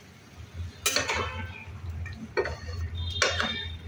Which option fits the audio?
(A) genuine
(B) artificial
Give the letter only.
A